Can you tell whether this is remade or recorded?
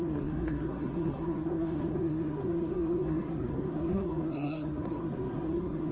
remade